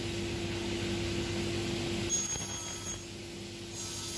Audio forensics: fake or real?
real